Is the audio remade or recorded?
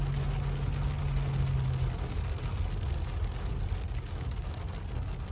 recorded